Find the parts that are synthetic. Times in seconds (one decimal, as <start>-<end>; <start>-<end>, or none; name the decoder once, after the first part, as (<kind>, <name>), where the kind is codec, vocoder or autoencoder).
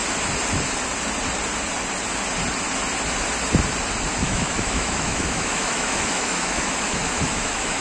4.2-7.8 (autoencoder, DAC-VAE)